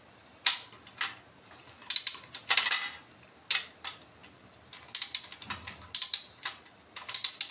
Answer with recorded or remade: recorded